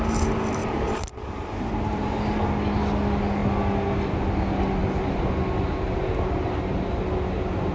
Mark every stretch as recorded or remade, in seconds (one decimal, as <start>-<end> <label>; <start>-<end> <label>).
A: 0.0-0.6 recorded; 0.6-2.5 remade; 2.5-7.7 recorded